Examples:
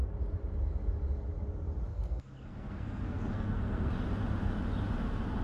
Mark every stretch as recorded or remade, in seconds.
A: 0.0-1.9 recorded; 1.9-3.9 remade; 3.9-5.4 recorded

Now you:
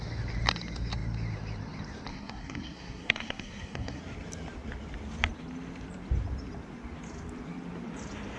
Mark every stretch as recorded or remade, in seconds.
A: 0.0-2.1 recorded; 2.1-4.0 remade; 4.0-8.4 recorded

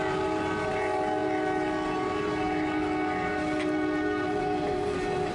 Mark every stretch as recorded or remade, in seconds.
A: 0.0-5.3 recorded

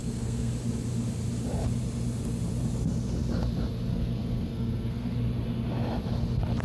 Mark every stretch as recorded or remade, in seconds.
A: 0.0-0.5 remade; 0.5-3.9 recorded; 3.9-5.2 remade; 5.2-6.6 recorded

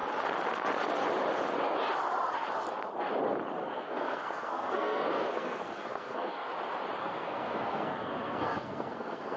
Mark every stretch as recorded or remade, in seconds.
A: 0.0-3.6 recorded; 3.6-6.5 remade; 6.5-7.0 recorded; 7.0-9.4 remade

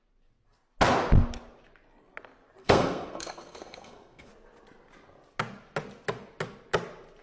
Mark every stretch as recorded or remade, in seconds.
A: 0.0-2.6 recorded; 2.6-4.3 remade; 4.3-7.2 recorded

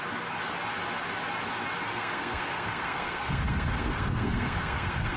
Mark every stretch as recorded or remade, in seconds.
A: 0.0-1.9 recorded; 1.9-5.2 remade